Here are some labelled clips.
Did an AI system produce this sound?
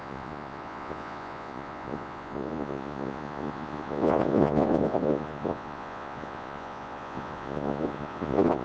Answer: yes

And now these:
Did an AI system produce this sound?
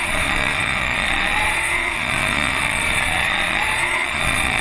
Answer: yes